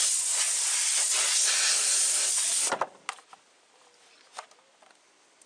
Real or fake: real